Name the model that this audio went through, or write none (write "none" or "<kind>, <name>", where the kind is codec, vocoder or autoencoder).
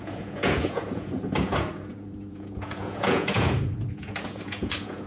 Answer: vocoder, Vocos